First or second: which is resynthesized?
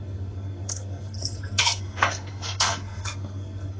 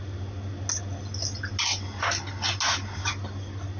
first